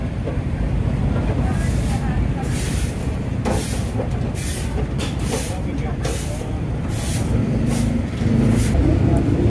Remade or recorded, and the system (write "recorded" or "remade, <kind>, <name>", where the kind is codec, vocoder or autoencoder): remade, vocoder, BigVGAN v2